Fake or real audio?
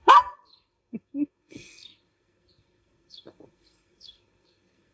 fake